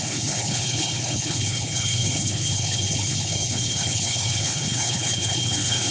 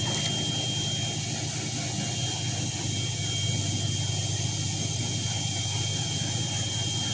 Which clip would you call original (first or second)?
second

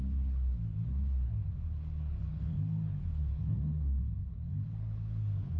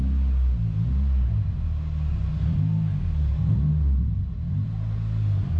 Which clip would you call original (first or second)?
second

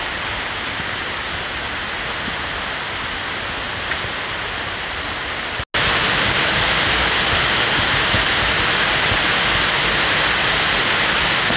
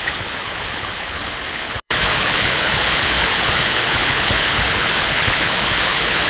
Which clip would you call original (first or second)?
first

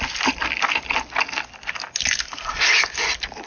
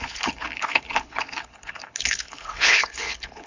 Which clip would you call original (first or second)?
first